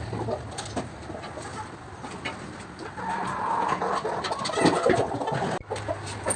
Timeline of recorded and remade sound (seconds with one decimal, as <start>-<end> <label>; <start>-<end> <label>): 0.0-6.4 recorded